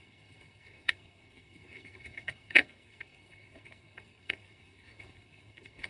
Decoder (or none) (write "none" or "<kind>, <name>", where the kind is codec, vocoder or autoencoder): codec, SNAC